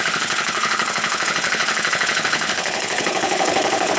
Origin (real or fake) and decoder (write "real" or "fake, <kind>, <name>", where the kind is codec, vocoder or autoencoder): fake, codec, HILCodec